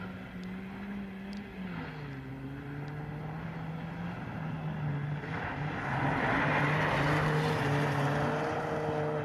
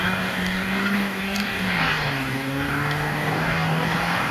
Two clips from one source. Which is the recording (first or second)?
first